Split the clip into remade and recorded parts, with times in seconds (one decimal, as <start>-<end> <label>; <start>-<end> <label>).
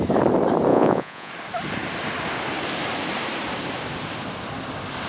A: 0.0-0.7 recorded; 0.7-1.3 remade; 1.3-5.1 recorded